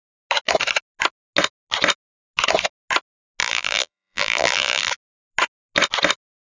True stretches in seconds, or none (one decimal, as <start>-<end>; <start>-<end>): 0.0-3.4; 4.9-6.5